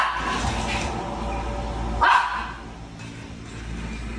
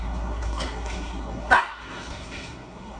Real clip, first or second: first